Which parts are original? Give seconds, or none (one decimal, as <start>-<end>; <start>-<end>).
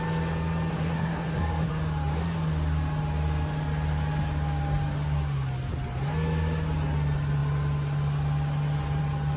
0.0-0.7; 1.7-9.4